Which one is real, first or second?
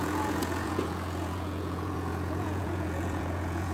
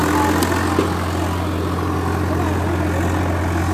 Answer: second